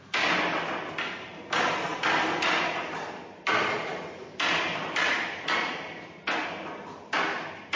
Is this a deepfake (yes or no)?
no